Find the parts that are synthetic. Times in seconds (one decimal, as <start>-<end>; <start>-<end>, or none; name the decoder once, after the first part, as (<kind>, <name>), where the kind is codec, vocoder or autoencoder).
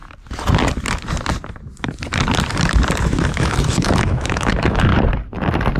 3.0-4.9 (autoencoder, DAC-VAE)